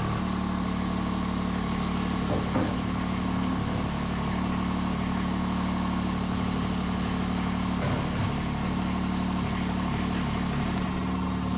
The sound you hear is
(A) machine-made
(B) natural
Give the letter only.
B